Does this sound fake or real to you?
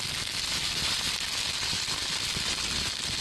real